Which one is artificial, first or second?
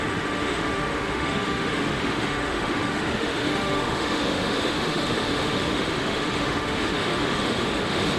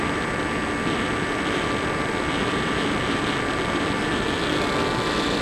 first